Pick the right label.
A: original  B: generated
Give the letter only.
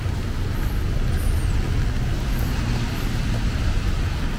A